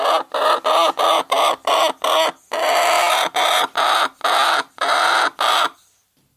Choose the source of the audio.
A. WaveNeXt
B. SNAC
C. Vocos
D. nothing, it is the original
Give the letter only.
D